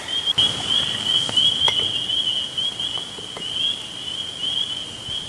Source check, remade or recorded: recorded